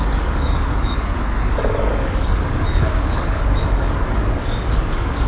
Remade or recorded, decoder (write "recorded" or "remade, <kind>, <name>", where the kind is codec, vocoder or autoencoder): remade, codec, DAC